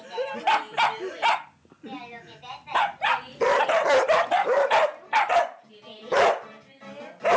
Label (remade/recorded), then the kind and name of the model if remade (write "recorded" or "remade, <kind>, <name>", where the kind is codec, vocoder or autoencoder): recorded